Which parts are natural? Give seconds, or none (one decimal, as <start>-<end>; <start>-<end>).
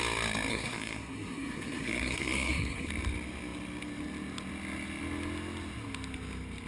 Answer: 0.0-0.5; 2.9-6.7